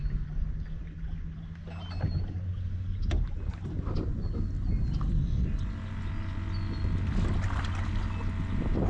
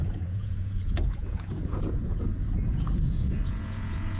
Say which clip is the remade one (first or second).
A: second